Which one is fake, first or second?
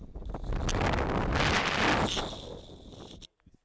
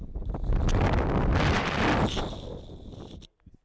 second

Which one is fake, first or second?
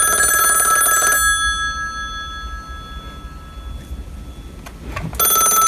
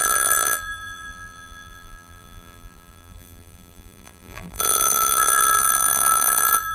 second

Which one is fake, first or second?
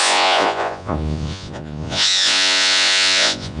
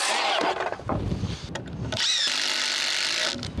first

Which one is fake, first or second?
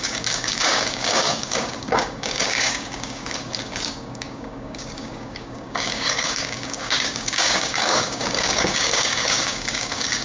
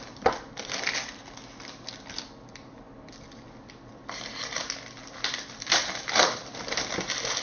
first